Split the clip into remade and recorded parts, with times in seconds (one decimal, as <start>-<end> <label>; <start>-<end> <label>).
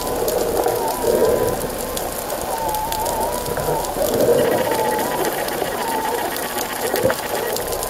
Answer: 0.0-4.3 recorded; 4.3-6.4 remade; 6.4-7.9 recorded